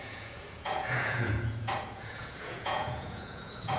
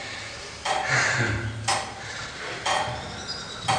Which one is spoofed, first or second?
first